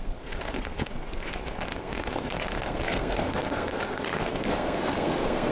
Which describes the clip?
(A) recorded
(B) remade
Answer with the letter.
B